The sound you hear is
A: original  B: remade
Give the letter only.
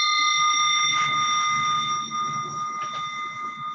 A